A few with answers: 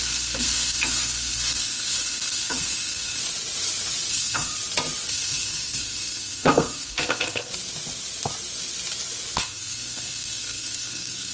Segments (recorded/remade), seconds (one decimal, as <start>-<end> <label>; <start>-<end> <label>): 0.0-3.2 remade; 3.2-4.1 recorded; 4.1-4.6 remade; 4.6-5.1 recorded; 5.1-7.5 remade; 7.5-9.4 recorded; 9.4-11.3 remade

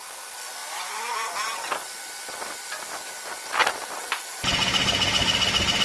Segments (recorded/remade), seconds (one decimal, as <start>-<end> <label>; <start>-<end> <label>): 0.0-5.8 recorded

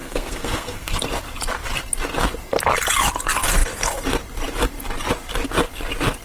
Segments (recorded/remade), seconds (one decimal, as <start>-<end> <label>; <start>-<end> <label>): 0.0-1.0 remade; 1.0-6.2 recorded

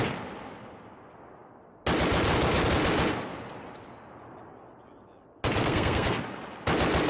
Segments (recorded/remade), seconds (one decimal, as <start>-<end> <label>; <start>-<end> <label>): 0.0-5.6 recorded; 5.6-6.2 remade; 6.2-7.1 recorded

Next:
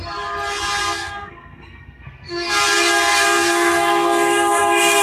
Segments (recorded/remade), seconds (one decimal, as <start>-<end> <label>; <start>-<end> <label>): 0.0-0.8 recorded; 0.8-2.5 remade; 2.5-3.1 recorded; 3.1-5.0 remade